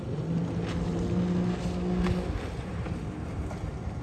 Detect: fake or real real